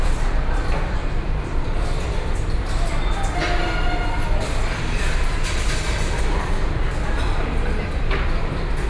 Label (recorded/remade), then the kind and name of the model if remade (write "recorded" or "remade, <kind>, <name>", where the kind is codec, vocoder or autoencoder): remade, vocoder, BigVGAN v2